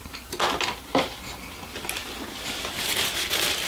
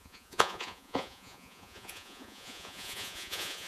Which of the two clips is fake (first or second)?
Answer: second